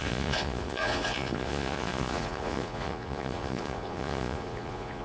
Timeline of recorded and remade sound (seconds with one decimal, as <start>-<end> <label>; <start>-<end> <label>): 0.0-5.0 remade